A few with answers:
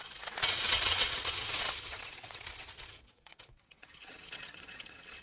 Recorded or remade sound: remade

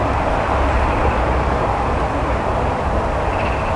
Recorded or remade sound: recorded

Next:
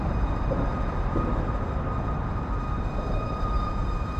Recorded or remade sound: remade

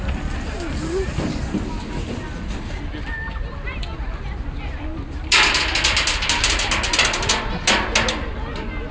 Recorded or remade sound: recorded